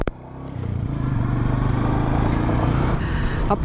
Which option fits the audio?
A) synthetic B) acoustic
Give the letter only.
A